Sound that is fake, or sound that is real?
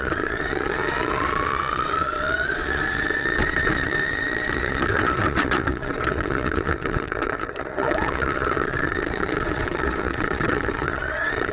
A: fake